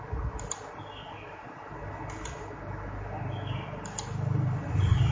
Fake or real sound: real